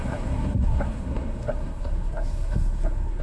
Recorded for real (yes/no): no